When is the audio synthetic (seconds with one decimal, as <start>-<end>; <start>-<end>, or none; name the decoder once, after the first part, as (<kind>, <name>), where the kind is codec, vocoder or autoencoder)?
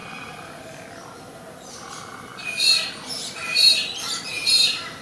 1.7-2.3 (vocoder, BigVGAN v2); 4.2-5.0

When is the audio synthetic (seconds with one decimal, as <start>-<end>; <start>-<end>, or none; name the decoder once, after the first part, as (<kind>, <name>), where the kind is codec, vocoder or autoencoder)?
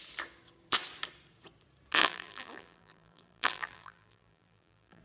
2.0-5.0 (vocoder, BigVGAN v2)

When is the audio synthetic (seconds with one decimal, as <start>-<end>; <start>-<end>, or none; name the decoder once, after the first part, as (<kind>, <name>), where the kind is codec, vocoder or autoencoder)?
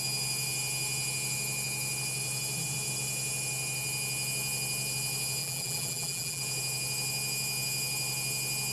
5.4-6.4 (vocoder, BigVGAN v2)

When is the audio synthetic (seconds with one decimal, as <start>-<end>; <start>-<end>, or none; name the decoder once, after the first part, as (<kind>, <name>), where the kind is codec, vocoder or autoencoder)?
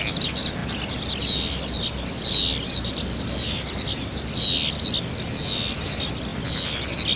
none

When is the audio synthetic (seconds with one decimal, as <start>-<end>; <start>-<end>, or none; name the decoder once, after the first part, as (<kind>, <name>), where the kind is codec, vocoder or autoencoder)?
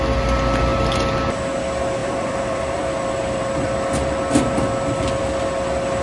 2.0-3.7 (vocoder, BigVGAN v2)